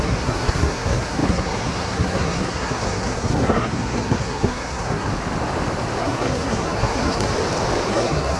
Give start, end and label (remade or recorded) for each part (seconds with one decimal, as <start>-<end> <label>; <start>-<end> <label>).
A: 0.0-5.1 remade; 5.1-6.0 recorded; 6.0-7.3 remade; 7.3-7.9 recorded; 7.9-8.4 remade